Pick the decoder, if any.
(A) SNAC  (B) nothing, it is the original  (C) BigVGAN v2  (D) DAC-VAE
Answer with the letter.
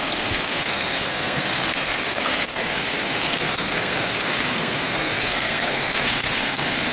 A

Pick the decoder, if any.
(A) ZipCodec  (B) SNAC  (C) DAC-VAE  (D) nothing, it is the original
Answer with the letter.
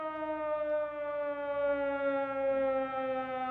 D